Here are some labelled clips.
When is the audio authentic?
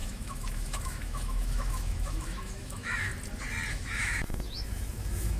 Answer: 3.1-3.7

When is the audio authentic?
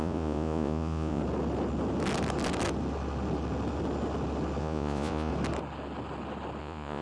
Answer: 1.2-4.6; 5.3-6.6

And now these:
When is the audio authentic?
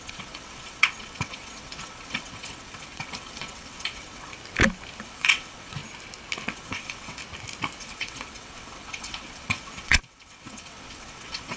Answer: 4.3-5.0; 5.8-6.5; 7.2-7.8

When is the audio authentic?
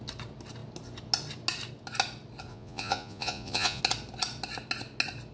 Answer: 0.0-2.5; 3.8-5.3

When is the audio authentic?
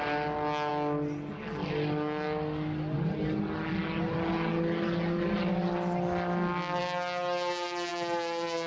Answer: 0.0-8.7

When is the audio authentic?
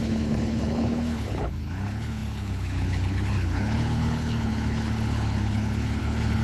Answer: none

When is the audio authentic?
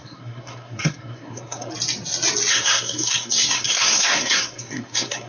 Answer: 1.7-2.5